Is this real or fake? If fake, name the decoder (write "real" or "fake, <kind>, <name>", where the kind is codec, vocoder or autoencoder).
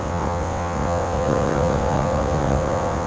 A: fake, vocoder, WaveNeXt